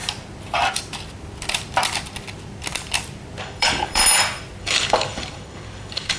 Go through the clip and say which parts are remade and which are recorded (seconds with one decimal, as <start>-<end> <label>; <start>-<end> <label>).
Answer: 0.0-3.4 recorded; 3.4-4.0 remade; 4.0-4.6 recorded; 4.6-6.2 remade

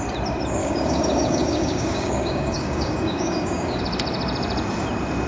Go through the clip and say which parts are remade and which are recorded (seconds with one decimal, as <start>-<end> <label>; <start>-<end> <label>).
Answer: 0.0-0.6 recorded; 0.6-3.8 remade; 3.8-5.3 recorded

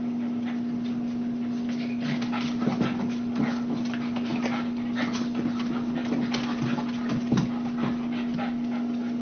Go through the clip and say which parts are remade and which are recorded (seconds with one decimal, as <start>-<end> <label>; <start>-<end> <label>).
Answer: 0.0-9.2 recorded

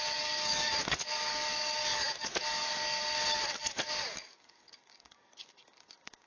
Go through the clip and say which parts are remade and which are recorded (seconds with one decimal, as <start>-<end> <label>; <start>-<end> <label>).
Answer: 0.0-3.0 remade; 3.0-3.5 recorded; 3.5-6.3 remade

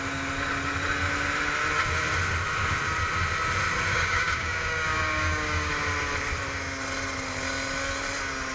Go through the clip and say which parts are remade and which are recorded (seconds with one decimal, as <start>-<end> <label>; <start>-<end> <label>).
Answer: 0.0-3.9 recorded; 3.9-5.7 remade; 5.7-8.5 recorded

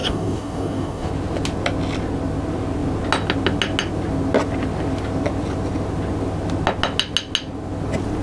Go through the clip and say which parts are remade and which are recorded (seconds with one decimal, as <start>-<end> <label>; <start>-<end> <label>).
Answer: 0.0-1.1 remade; 1.1-8.2 recorded